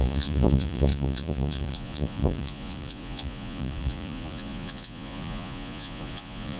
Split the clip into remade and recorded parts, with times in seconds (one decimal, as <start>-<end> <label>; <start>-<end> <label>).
0.0-6.6 remade